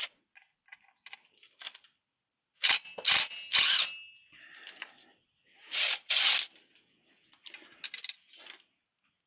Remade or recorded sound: recorded